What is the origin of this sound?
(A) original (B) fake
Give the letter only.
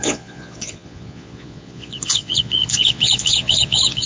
B